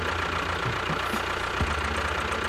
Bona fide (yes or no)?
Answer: yes